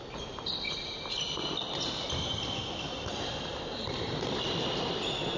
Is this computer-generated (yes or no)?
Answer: no